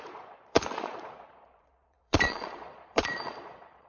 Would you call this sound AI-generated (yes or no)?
yes